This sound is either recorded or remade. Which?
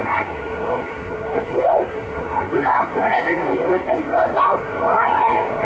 remade